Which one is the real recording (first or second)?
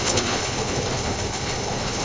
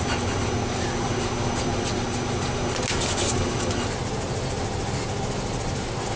second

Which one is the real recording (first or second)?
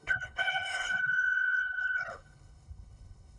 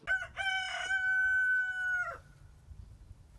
second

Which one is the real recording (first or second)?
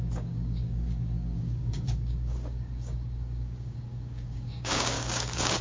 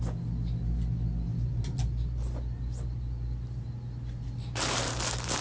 second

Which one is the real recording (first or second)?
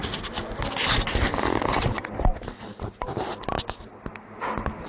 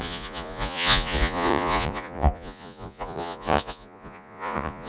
first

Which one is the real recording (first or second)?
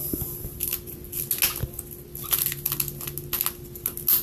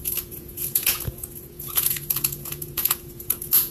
first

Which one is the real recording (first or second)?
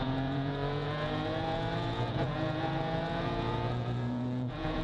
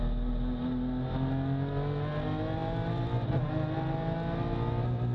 second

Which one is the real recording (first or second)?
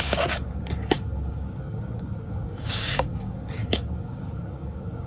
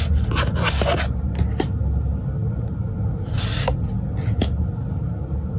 second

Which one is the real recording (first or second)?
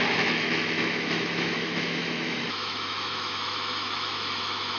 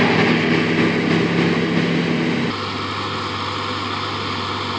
second